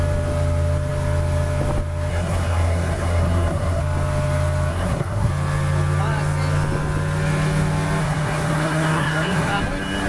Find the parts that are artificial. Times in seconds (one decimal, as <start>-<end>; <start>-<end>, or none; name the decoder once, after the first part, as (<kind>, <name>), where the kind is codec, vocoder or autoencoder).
2.1-3.8 (codec, SNAC); 4.7-5.3; 8.0-9.5